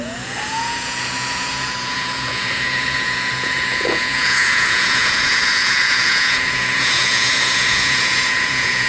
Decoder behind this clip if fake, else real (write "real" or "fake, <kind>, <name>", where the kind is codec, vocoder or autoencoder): fake, vocoder, Vocos